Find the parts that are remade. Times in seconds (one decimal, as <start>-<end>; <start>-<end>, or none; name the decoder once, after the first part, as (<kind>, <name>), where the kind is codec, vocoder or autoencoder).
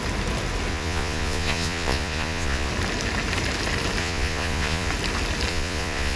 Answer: 0.7-2.7 (vocoder, Vocos); 4.0-4.9; 5.5-6.2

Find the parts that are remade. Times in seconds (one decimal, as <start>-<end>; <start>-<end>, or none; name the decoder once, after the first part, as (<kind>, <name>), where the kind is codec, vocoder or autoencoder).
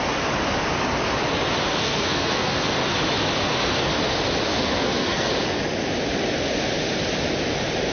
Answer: 1.8-2.6 (codec, SNAC); 4.5-5.3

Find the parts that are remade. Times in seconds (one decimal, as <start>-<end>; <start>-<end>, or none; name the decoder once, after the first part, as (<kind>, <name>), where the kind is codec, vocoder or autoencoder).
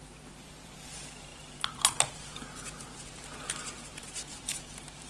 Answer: 0.0-5.1 (vocoder, BigVGAN v2)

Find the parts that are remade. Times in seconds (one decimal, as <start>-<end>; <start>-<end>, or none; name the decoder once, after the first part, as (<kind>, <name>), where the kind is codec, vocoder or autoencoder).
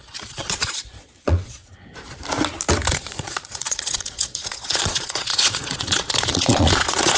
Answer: 0.0-1.6 (vocoder, Vocos); 2.9-7.2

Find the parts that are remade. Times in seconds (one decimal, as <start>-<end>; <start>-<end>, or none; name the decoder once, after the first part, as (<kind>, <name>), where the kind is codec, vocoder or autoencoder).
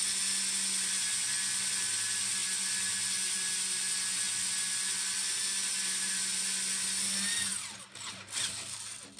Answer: none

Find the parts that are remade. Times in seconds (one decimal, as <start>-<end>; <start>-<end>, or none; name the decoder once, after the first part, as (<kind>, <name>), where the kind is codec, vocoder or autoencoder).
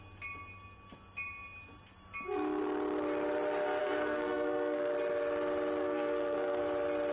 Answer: 3.8-4.9 (codec, SNAC); 5.8-6.6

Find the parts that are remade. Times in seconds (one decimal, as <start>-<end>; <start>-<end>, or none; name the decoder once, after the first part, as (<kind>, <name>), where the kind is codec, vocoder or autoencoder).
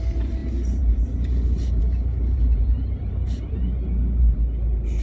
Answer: none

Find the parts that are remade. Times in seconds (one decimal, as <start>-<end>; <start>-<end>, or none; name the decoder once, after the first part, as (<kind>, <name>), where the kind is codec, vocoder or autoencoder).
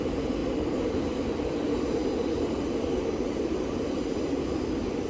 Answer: 0.4-1.0 (vocoder, BigVGAN v2); 2.0-3.9